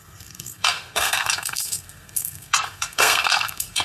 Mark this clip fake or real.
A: fake